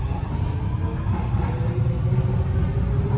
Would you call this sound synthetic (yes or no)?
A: no